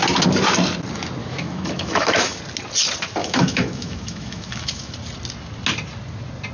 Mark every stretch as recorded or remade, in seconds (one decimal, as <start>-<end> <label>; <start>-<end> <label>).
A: 0.0-1.2 recorded; 1.2-2.4 remade; 2.4-3.2 recorded; 3.2-4.9 remade; 4.9-6.5 recorded